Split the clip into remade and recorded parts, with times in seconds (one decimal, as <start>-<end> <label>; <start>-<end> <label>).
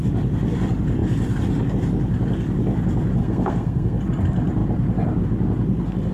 0.0-3.2 recorded; 3.2-4.0 remade; 4.0-6.1 recorded